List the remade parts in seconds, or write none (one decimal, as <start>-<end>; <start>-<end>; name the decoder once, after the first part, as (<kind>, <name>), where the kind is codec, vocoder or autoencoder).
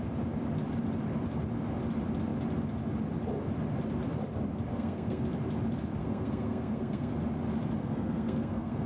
4.7-5.2 (codec, SNAC); 6.0-7.1; 7.8-8.9